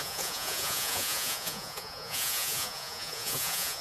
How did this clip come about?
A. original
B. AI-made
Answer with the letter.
B